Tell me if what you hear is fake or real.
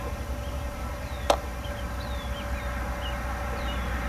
real